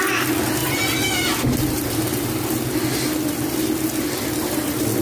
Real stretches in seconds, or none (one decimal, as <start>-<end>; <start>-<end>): 0.0-5.0